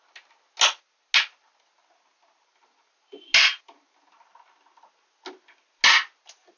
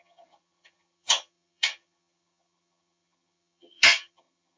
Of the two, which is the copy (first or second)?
second